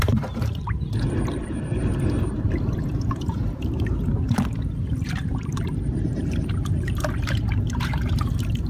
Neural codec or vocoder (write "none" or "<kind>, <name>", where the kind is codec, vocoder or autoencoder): vocoder, BigVGAN v2